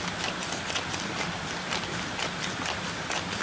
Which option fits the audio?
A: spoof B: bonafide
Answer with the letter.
B